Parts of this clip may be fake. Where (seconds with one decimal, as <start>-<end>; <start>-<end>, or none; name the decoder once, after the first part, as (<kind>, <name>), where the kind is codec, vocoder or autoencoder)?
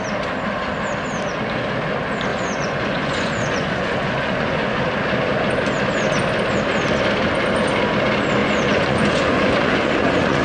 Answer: 2.3-4.8 (vocoder, Vocos); 8.4-10.4